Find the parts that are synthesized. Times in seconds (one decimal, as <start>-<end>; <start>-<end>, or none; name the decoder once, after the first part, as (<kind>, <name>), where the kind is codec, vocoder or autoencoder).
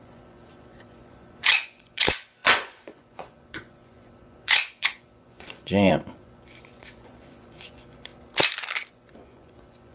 0.0-8.1 (vocoder, Vocos); 8.9-9.9